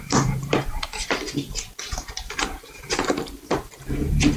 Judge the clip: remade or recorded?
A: remade